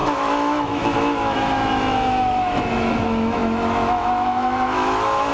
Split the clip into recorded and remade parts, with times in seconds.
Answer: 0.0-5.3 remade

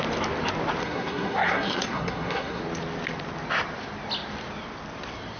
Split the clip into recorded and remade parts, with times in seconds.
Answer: 0.0-0.8 recorded; 0.8-2.6 remade; 2.6-5.4 recorded